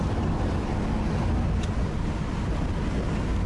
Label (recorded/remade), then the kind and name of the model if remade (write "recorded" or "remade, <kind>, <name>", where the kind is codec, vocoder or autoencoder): recorded